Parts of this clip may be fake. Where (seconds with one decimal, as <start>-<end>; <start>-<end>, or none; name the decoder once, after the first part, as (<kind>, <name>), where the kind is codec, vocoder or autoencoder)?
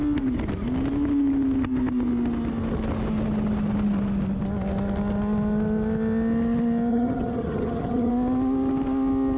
6.9-8.1 (vocoder, HiFi-GAN)